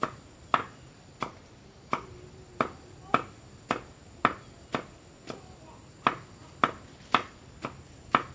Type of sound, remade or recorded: recorded